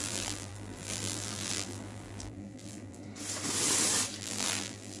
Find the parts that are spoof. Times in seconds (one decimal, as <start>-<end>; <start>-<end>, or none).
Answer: 0.0-3.0; 4.2-5.0